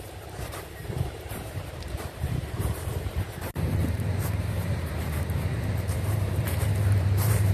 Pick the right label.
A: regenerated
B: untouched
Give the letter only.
A